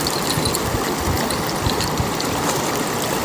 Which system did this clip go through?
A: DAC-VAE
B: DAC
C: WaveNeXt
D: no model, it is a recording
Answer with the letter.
D